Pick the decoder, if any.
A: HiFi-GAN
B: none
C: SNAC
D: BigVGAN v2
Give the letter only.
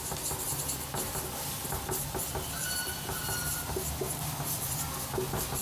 B